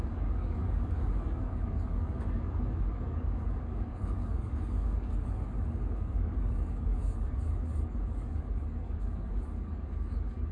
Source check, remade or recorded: remade